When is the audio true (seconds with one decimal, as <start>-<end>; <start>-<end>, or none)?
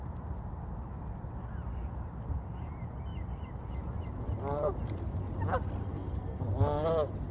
0.0-5.8; 6.4-7.3